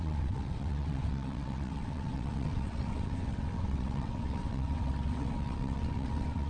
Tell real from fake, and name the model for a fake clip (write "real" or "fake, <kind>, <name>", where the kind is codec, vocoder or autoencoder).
fake, vocoder, WaveNeXt